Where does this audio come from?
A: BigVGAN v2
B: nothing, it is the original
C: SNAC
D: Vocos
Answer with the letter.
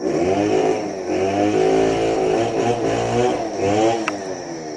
B